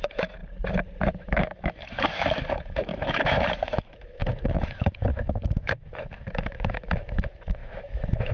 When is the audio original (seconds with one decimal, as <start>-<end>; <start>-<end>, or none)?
0.4-1.1